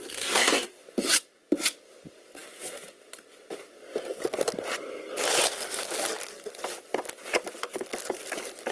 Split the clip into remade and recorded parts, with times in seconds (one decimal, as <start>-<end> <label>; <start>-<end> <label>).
0.0-0.8 remade; 0.8-8.7 recorded